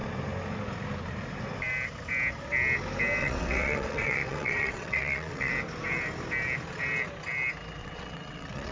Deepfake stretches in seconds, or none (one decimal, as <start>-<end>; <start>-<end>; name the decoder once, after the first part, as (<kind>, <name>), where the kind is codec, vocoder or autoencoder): 3.2-5.5 (vocoder, WaveNeXt); 7.8-8.7

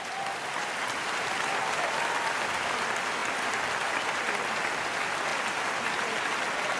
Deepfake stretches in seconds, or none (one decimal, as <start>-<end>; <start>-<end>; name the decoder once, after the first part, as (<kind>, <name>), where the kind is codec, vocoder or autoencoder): none

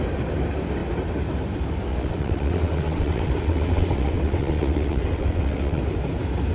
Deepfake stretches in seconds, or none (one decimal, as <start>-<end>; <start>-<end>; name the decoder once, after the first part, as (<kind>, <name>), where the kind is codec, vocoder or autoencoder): 1.9-5.8 (vocoder, WaveNeXt)

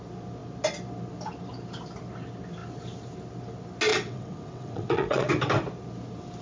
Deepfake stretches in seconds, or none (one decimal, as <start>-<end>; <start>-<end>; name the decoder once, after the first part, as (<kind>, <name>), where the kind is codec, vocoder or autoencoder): 3.9-5.3 (vocoder, WaveNeXt)

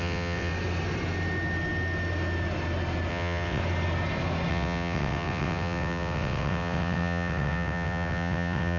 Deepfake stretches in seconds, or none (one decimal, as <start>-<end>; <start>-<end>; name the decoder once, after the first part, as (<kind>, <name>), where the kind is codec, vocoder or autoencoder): 0.0-0.5 (vocoder, WaveNeXt); 3.1-3.6; 4.5-8.8

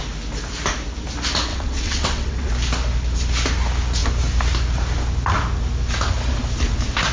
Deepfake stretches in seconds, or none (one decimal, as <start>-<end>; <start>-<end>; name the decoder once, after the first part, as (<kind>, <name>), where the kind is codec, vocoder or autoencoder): 1.5-2.5 (vocoder, WaveNeXt)

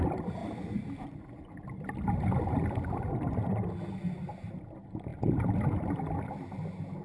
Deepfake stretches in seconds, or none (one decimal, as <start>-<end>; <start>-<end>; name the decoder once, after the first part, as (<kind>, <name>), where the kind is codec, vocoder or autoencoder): none